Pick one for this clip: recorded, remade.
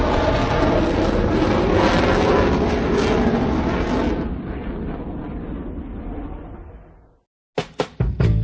recorded